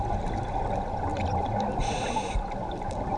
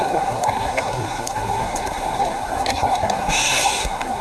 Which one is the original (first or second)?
first